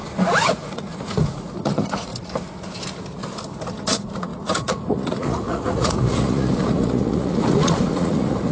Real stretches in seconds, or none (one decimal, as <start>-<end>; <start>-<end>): 2.1-3.8